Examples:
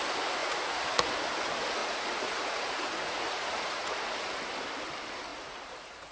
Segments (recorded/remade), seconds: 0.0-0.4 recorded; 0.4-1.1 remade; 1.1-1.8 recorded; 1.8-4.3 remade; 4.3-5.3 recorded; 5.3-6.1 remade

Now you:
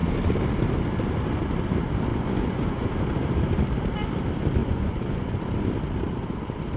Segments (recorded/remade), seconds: 0.0-2.1 recorded; 2.1-2.9 remade; 2.9-4.6 recorded; 4.6-5.4 remade; 5.4-6.8 recorded

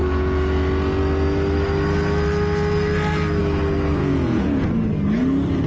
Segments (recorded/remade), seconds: 0.0-4.0 recorded; 4.0-4.7 remade; 4.7-5.7 recorded